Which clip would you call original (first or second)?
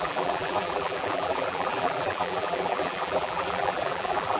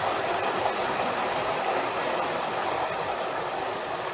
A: second